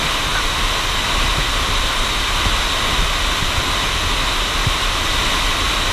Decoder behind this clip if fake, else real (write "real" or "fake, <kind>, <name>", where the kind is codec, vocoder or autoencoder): real